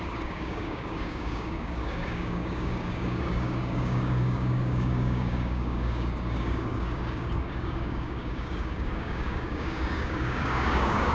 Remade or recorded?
remade